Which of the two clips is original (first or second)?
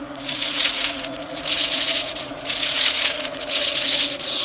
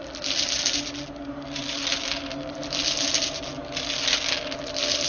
second